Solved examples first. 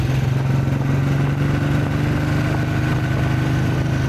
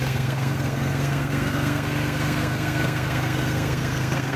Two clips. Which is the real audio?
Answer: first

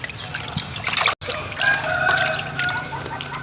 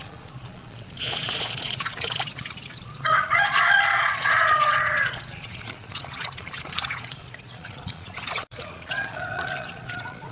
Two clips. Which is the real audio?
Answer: first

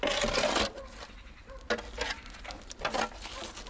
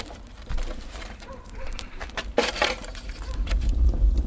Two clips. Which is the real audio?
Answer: first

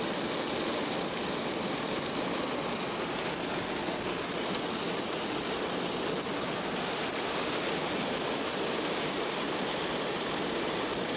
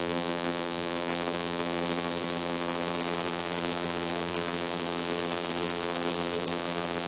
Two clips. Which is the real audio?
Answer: first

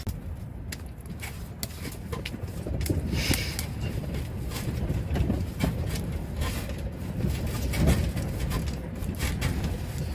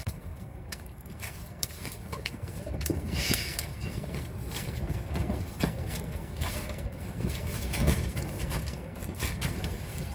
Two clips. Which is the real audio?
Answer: first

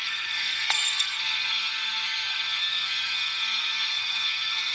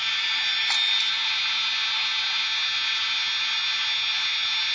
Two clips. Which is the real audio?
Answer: second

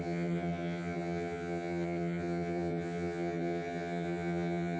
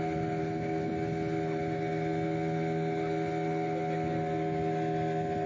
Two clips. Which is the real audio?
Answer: second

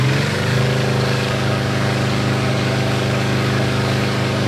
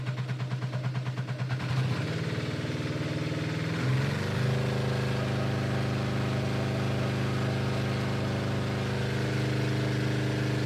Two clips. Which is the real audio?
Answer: second